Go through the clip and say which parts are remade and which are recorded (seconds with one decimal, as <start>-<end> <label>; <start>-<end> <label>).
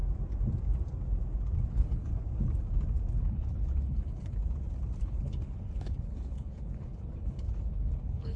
0.0-1.7 recorded; 1.7-2.1 remade; 2.1-3.2 recorded; 3.2-4.4 remade; 4.4-5.0 recorded; 5.0-8.4 remade